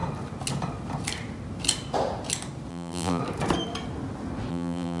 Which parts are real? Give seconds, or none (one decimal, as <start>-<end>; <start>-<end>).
0.0-2.7; 3.2-4.5

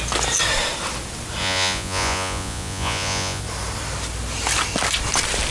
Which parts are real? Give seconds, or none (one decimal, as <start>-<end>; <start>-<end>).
0.0-1.4; 3.4-5.5

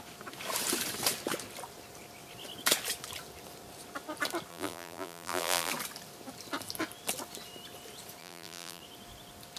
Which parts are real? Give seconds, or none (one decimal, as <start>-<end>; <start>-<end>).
0.0-4.5; 5.7-8.2; 8.8-9.6

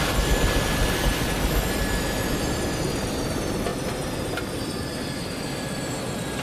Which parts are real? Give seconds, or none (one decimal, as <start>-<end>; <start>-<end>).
0.0-6.4

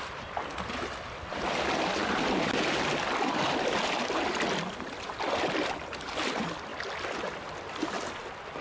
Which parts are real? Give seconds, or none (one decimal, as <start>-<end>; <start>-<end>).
0.0-8.6

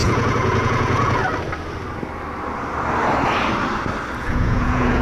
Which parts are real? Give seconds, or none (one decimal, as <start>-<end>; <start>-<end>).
1.2-4.2

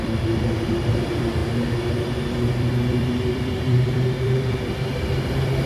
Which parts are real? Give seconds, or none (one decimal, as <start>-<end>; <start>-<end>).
1.4-2.3